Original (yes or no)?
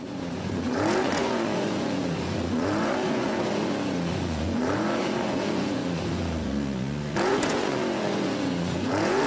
no